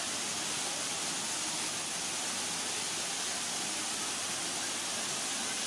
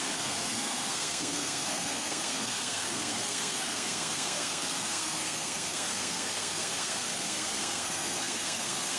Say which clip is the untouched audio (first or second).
first